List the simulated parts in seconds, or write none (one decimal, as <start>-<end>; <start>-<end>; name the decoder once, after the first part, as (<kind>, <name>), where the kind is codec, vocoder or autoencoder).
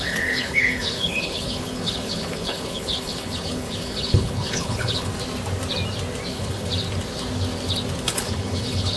0.0-5.1 (codec, HILCodec); 6.3-6.7; 8.0-9.0